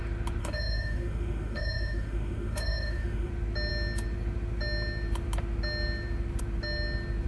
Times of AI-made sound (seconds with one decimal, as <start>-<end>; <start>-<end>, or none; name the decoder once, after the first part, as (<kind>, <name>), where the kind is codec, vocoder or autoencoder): 0.4-3.3 (autoencoder, DAC-VAE)